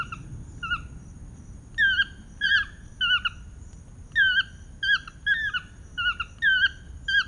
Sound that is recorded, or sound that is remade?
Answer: recorded